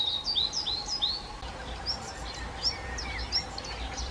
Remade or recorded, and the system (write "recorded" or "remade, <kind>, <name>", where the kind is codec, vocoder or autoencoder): recorded